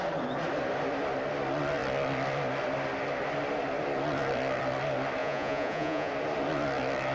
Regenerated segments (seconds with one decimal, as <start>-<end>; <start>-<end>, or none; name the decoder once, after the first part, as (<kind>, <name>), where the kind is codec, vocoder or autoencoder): 5.2-6.1 (vocoder, Vocos)